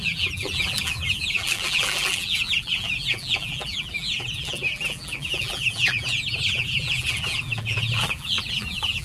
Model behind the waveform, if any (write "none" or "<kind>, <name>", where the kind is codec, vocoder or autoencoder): vocoder, BigVGAN v2